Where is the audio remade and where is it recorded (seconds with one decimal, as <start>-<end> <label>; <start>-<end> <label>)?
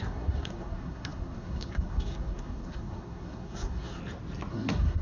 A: 0.0-4.0 remade; 4.0-4.5 recorded; 4.5-5.0 remade